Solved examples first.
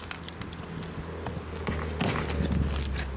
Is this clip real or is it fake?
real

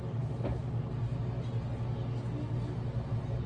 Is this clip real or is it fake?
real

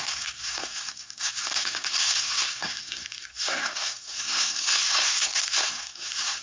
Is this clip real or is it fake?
fake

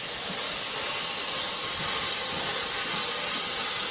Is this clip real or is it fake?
real